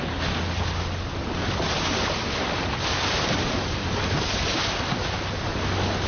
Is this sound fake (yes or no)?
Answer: no